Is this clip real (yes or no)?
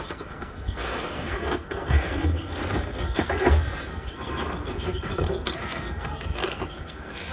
no